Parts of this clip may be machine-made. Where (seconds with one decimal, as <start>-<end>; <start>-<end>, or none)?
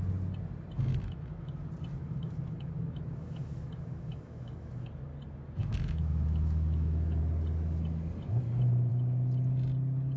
0.9-1.5; 2.0-4.9; 5.6-7.2